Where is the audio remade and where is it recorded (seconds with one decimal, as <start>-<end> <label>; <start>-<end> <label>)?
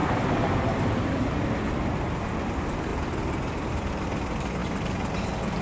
0.0-1.7 remade; 1.7-2.9 recorded; 2.9-3.9 remade; 3.9-5.6 recorded